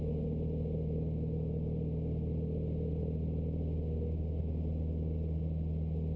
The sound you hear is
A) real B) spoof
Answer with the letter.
A